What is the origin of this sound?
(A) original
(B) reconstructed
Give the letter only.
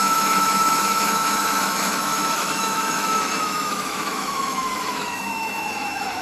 B